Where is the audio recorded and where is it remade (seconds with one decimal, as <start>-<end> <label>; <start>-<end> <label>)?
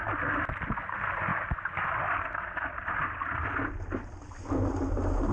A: 0.0-5.3 recorded